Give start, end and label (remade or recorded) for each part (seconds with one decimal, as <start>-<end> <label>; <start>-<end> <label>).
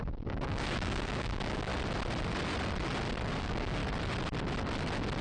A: 0.0-1.7 remade; 1.7-3.4 recorded; 3.4-3.8 remade; 3.8-5.2 recorded